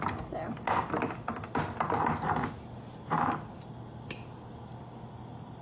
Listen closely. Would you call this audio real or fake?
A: real